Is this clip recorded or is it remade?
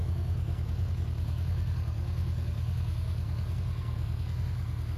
remade